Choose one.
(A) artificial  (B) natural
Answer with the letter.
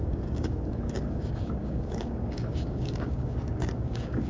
A